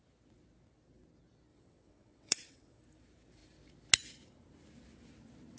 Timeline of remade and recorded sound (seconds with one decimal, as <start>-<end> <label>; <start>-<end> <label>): 0.0-1.5 recorded; 1.5-2.8 remade; 2.8-5.6 recorded